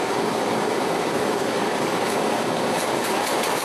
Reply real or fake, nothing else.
fake